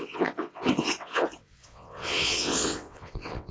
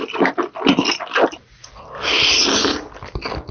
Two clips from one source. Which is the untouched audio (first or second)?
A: second